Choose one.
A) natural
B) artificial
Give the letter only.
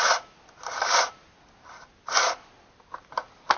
A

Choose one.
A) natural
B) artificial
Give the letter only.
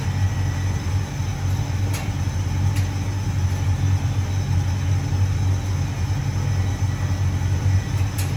A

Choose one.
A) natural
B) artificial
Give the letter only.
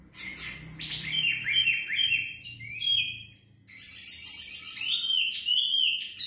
A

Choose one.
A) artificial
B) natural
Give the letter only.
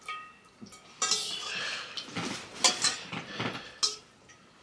B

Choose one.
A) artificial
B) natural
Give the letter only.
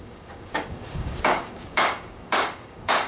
A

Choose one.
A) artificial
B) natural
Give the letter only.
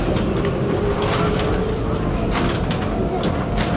B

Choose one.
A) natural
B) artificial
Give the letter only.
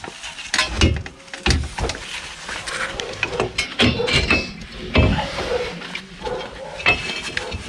A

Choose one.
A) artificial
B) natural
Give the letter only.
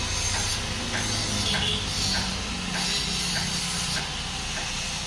B